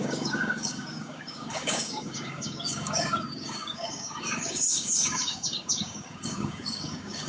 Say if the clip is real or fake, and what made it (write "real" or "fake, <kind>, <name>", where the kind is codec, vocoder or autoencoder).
fake, codec, DAC